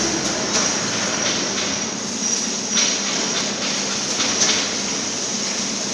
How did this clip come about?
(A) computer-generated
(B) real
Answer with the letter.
B